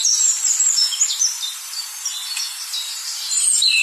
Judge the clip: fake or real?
fake